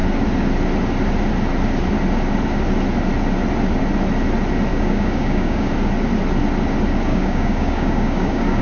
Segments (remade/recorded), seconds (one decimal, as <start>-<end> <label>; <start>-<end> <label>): 0.0-4.7 recorded; 4.7-5.7 remade; 5.7-7.1 recorded; 7.1-8.6 remade

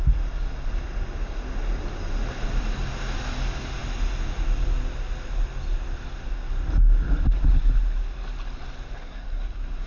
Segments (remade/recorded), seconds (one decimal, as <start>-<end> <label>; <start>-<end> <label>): 0.0-9.0 recorded; 9.0-9.9 remade

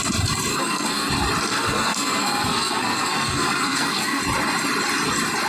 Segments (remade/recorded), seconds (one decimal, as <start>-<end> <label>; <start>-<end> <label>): 0.0-0.5 recorded; 0.5-1.1 remade; 1.1-1.5 recorded; 1.5-4.2 remade; 4.2-5.5 recorded

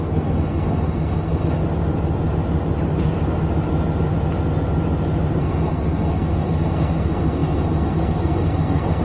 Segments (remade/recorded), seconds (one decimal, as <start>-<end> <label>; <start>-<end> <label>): 0.0-1.6 remade; 1.6-5.4 recorded; 5.4-9.0 remade

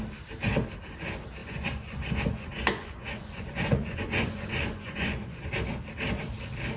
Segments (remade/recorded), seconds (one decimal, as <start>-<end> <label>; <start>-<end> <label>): 0.0-1.4 recorded; 1.4-5.5 remade; 5.5-6.8 recorded

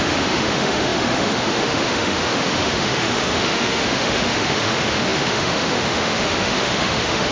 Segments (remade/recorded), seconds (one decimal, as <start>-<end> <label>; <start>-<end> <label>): 0.0-7.3 remade